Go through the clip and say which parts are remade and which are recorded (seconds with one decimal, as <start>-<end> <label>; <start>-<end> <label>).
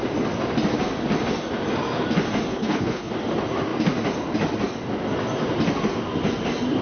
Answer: 0.0-2.5 recorded; 2.5-3.1 remade; 3.1-6.8 recorded